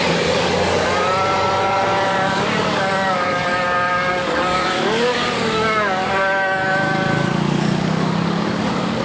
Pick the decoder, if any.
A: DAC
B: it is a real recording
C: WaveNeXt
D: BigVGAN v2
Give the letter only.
A